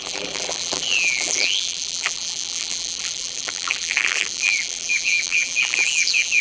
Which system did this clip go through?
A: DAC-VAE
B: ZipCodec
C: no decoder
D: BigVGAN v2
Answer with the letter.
D